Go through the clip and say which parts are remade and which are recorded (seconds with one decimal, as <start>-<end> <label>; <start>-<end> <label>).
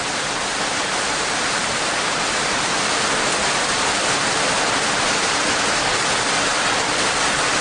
0.0-0.5 recorded; 0.5-5.1 remade; 5.1-7.6 recorded